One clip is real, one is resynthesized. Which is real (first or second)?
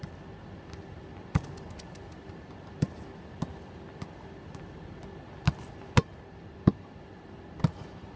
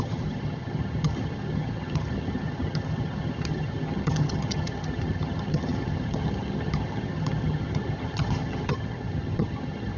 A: first